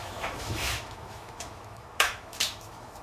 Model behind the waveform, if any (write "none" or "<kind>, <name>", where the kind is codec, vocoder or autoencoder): autoencoder, DAC-VAE